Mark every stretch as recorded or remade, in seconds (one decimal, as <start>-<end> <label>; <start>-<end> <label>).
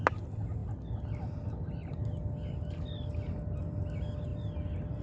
0.0-5.0 recorded